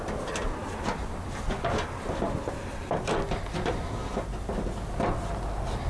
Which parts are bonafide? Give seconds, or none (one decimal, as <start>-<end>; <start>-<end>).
0.0-5.9